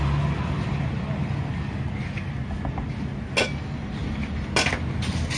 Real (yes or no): yes